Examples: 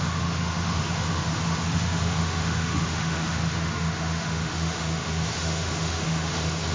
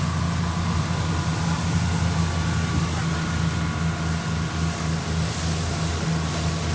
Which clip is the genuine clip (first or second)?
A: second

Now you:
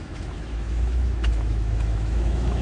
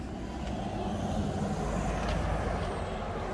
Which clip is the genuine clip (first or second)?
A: second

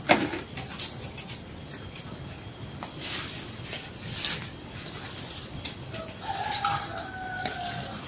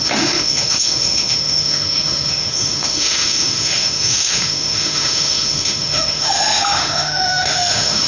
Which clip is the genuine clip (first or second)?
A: first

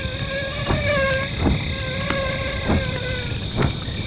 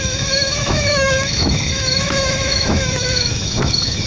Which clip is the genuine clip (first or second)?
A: first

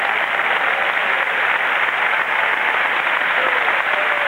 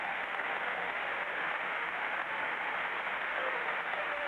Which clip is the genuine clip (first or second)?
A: first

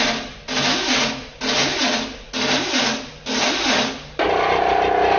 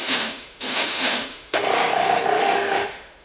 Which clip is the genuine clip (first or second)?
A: first